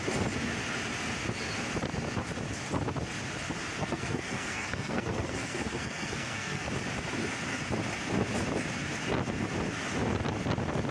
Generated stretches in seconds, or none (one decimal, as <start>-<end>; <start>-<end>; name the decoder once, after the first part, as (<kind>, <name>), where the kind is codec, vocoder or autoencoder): 3.8-6.7 (codec, SNAC)